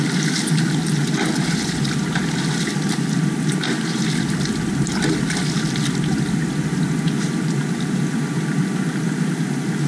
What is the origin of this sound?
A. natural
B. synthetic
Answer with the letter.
A